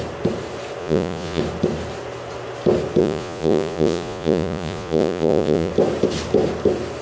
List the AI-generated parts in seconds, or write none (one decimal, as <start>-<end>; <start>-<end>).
0.8-1.4; 3.0-5.7